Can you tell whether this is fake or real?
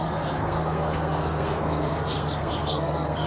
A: fake